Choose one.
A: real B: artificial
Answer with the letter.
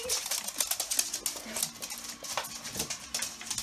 A